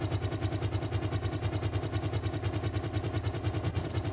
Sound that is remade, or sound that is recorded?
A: recorded